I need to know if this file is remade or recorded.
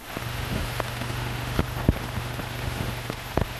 remade